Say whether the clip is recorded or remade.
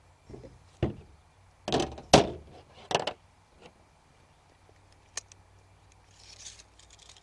recorded